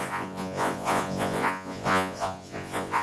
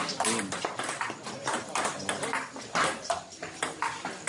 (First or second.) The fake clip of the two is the first